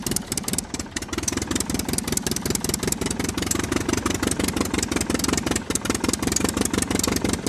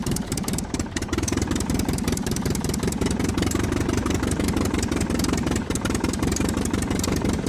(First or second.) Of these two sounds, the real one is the first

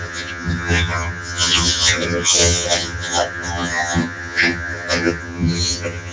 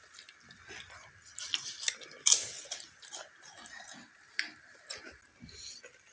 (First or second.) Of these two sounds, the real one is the second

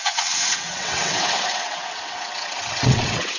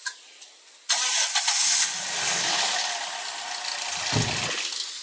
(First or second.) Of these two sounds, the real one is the second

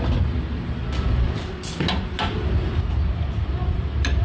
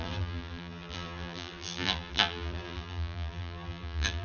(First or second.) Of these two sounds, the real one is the first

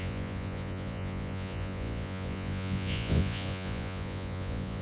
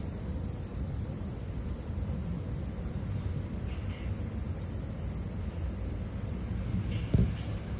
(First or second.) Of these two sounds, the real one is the second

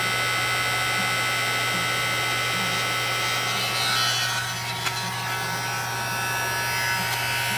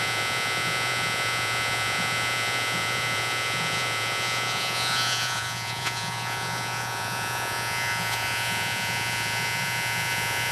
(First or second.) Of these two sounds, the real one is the first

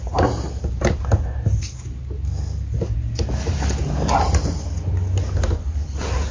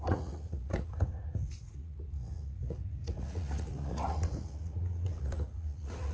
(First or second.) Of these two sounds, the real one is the first